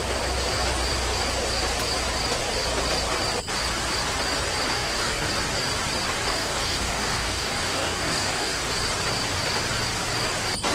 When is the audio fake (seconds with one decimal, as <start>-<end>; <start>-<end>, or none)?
4.7-5.3; 6.3-8.6